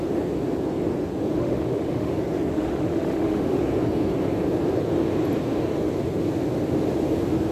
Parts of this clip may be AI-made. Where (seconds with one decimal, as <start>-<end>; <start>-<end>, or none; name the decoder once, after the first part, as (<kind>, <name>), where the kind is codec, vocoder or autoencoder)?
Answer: 1.4-2.1 (autoencoder, DAC-VAE); 2.5-3.6